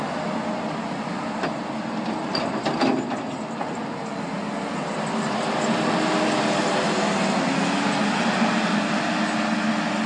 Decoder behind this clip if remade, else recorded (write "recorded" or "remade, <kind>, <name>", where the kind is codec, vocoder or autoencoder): recorded